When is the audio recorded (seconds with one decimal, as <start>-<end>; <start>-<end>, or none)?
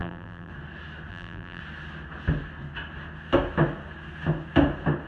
0.5-1.1; 1.6-5.1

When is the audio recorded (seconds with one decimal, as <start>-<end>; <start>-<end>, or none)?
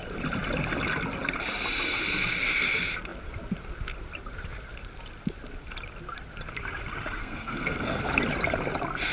0.0-7.2; 8.0-9.1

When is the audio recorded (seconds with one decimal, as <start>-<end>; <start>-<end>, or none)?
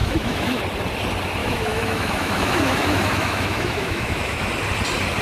0.6-1.4; 4.5-5.2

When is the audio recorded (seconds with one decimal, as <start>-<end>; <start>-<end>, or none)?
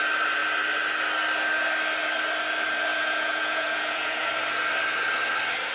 0.0-2.9; 4.3-5.7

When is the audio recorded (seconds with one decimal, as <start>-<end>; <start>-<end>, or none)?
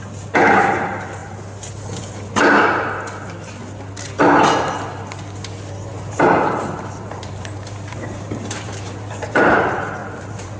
0.0-5.9; 9.5-10.0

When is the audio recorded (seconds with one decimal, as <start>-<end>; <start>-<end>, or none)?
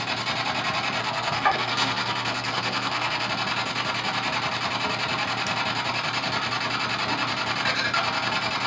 0.0-1.0; 3.3-8.7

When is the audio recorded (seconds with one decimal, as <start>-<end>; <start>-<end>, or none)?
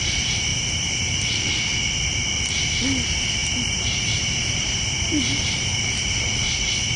0.0-0.5; 1.2-3.4; 5.8-7.0